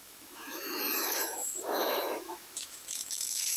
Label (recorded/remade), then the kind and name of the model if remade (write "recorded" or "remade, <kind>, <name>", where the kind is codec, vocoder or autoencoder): remade, autoencoder, DAC-VAE